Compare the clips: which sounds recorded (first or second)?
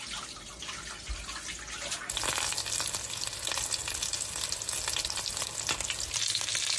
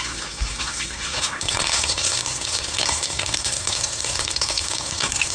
first